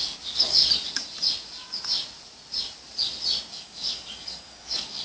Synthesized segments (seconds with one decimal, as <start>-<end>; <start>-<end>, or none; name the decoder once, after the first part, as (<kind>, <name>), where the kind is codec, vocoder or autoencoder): 0.0-0.6 (codec, DAC); 3.5-5.0